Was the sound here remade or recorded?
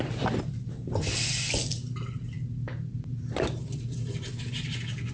recorded